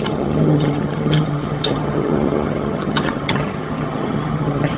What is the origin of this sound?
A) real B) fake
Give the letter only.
B